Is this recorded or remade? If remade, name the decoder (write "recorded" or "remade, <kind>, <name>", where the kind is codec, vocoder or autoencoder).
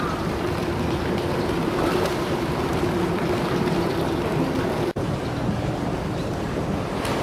remade, vocoder, BigVGAN v2